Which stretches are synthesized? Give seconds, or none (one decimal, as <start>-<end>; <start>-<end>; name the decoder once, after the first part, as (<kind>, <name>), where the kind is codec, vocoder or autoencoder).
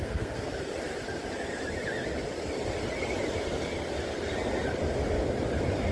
0.0-0.5 (codec, SNAC)